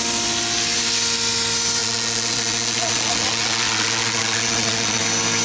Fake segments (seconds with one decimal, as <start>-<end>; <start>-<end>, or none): 1.8-5.0